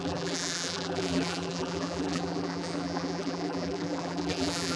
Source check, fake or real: fake